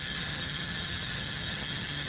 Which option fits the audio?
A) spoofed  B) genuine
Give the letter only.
A